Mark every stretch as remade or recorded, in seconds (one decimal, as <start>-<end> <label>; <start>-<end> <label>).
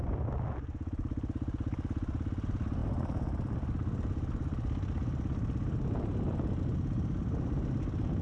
0.0-8.2 recorded